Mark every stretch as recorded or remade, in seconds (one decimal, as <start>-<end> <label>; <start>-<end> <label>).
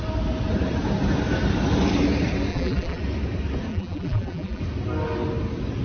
0.0-2.5 recorded; 2.5-3.0 remade; 3.0-3.7 recorded; 3.7-4.6 remade; 4.6-5.8 recorded